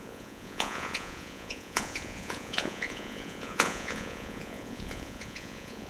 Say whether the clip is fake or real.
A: fake